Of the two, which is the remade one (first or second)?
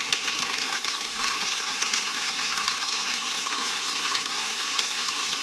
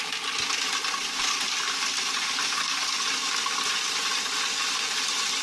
first